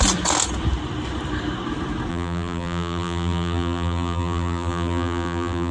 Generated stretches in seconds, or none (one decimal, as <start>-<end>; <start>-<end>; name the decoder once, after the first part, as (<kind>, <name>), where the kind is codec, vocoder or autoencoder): 2.1-5.7 (vocoder, BigVGAN v2)